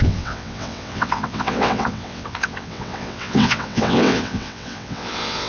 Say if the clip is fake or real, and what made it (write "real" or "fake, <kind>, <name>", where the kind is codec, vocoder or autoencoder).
fake, vocoder, WaveNeXt